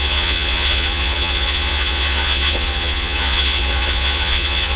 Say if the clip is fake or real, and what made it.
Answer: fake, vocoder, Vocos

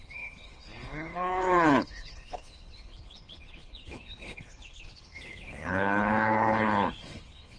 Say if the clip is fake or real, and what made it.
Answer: fake, codec, HILCodec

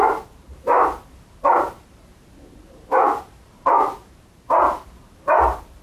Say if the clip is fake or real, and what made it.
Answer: fake, vocoder, BigVGAN v2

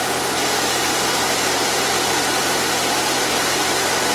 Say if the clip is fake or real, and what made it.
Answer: real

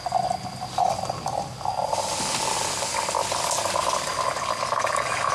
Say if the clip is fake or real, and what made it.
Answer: real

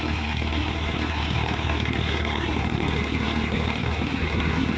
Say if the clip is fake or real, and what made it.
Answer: fake, codec, SNAC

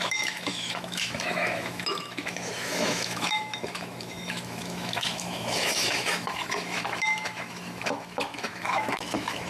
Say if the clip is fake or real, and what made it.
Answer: fake, autoencoder, DAC-VAE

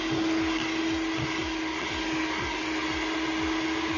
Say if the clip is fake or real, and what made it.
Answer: real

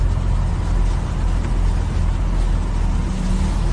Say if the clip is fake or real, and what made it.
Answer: real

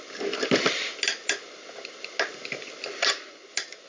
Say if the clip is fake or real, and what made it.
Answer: real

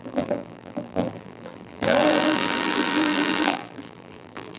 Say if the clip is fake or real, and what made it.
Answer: fake, vocoder, BigVGAN v2